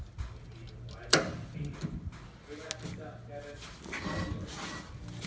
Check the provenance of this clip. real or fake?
real